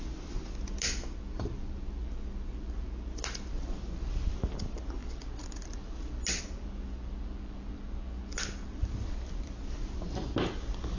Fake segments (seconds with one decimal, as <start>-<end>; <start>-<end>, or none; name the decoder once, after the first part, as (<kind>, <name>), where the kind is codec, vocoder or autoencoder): none